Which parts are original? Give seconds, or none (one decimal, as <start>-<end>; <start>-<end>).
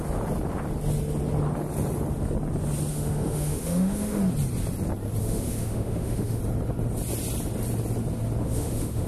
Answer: 0.0-2.9; 4.2-5.2; 6.4-8.4